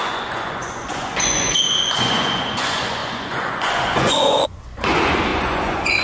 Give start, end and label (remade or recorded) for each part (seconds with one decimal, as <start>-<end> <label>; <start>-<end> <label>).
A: 0.0-6.0 remade